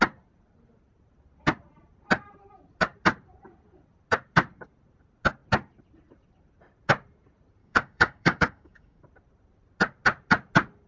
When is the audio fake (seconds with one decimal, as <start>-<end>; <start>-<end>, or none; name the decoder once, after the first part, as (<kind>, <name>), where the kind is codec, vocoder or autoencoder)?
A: 7.6-9.0 (codec, DAC)